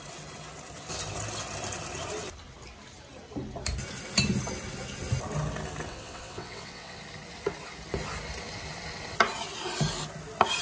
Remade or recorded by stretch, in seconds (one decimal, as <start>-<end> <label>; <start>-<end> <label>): 0.0-5.9 recorded; 5.9-7.0 remade; 7.0-10.6 recorded